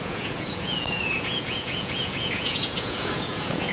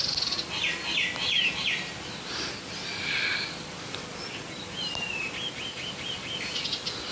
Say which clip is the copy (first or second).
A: first